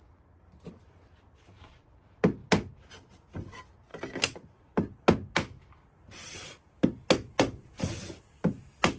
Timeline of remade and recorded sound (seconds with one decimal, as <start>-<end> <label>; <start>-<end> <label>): 0.0-9.0 recorded